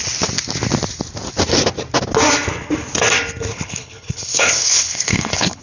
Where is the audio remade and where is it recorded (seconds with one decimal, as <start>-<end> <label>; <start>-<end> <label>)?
0.0-3.5 recorded; 3.5-5.6 remade